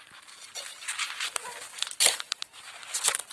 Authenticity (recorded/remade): recorded